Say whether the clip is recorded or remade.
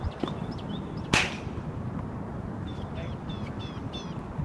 recorded